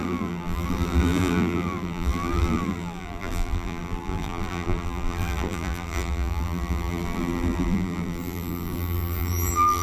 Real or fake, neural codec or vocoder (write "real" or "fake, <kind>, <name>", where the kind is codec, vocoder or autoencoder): fake, vocoder, BigVGAN v2